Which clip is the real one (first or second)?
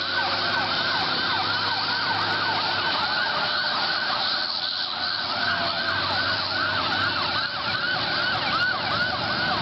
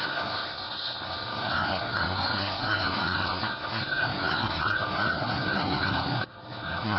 first